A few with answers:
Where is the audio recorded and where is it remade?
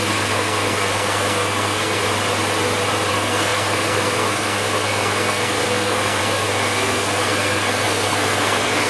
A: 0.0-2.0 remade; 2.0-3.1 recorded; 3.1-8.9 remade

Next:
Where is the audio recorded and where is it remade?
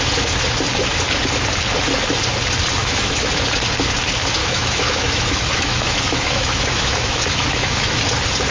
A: 0.0-2.8 recorded; 2.8-3.3 remade; 3.3-4.4 recorded; 4.4-8.0 remade; 8.0-8.5 recorded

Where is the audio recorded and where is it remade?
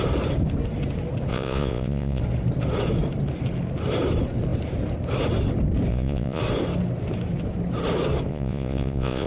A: 0.0-1.3 recorded; 1.3-2.2 remade; 2.2-5.9 recorded; 5.9-6.4 remade; 6.4-8.3 recorded; 8.3-9.3 remade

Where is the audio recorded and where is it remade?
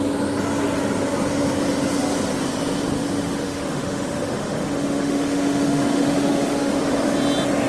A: 0.0-3.2 recorded; 3.2-7.1 remade; 7.1-7.7 recorded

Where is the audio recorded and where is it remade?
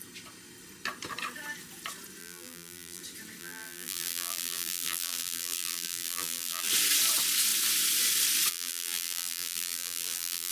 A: 0.0-2.2 recorded; 2.2-3.0 remade; 3.0-3.4 recorded; 3.4-6.7 remade; 6.7-8.5 recorded; 8.5-10.5 remade